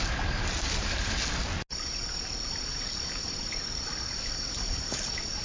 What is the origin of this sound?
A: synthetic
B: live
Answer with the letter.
B